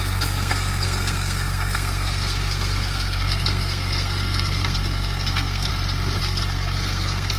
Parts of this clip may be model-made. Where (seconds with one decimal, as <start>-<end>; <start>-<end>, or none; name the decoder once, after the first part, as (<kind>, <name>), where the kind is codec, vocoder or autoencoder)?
0.0-5.7 (codec, SNAC); 6.2-7.4